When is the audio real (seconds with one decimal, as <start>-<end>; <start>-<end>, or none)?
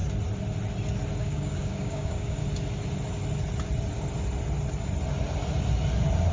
0.0-1.2; 2.4-6.3